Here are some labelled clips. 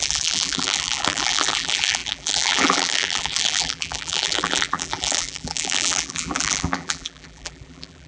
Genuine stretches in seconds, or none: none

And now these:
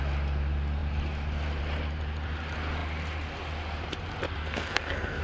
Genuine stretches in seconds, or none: 0.0-4.4

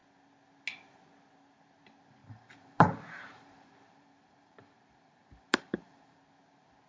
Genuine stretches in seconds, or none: 0.0-2.2; 6.2-6.9

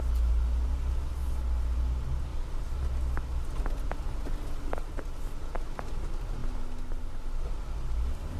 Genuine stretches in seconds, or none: 0.0-8.4

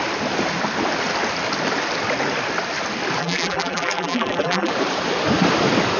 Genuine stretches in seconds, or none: 0.0-3.2; 4.7-6.0

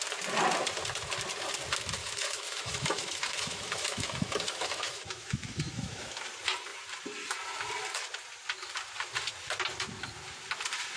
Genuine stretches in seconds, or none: 0.0-2.0; 6.3-11.0

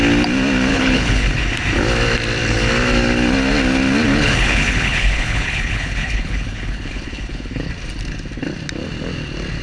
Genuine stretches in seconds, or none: 0.0-0.7; 1.4-4.1; 7.7-9.6

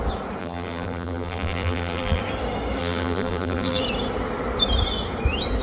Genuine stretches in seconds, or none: 0.0-0.4; 2.2-2.8; 3.8-5.6